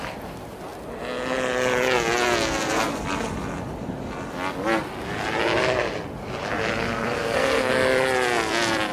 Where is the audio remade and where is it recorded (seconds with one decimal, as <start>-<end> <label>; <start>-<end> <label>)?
0.0-6.5 recorded; 6.5-7.7 remade; 7.7-8.9 recorded